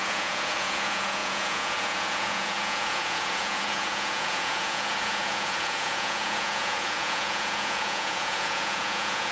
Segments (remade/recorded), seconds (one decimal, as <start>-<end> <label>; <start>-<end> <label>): 0.0-9.3 remade